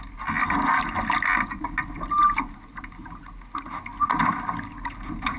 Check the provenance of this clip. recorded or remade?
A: recorded